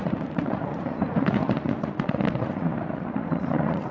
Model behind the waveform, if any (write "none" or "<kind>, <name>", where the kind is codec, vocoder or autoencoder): vocoder, Vocos